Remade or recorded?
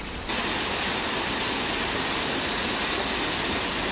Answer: recorded